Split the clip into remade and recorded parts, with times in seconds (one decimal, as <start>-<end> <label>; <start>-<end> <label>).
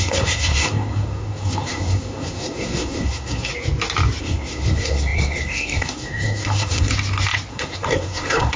0.0-3.5 remade; 3.5-4.2 recorded; 4.2-6.9 remade; 6.9-7.5 recorded; 7.5-8.6 remade